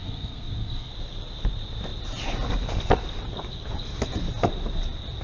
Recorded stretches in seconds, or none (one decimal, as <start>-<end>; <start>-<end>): 0.9-5.2